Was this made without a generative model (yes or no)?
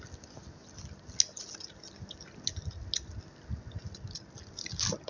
yes